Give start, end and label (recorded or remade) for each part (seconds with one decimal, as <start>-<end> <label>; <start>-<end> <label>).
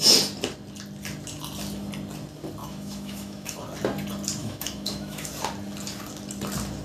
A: 0.0-2.6 recorded; 2.6-3.6 remade; 3.6-4.4 recorded; 4.4-5.3 remade; 5.3-6.8 recorded